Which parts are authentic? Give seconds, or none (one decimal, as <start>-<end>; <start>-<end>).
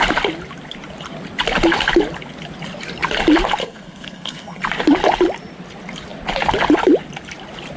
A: 0.0-3.6; 4.6-7.8